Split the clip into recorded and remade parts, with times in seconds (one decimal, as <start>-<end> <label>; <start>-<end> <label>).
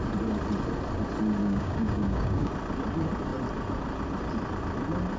0.0-1.4 recorded; 1.4-2.5 remade; 2.5-5.2 recorded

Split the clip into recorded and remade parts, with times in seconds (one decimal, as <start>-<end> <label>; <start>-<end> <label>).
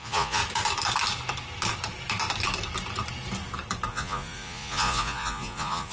0.0-0.4 remade; 0.4-3.9 recorded; 3.9-5.9 remade